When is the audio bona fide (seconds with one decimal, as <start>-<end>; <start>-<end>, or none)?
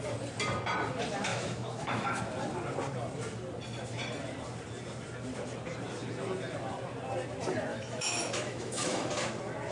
0.0-1.3; 2.2-7.7; 9.1-9.7